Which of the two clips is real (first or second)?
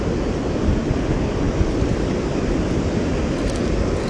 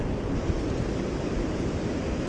first